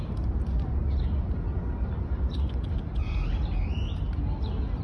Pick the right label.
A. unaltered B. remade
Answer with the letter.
A